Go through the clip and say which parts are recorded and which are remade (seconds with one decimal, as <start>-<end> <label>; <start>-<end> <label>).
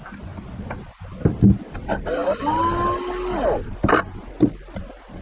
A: 0.0-5.2 recorded